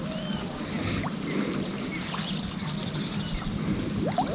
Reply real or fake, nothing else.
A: real